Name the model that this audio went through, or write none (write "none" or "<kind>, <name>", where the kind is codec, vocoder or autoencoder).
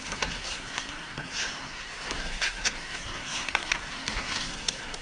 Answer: codec, SNAC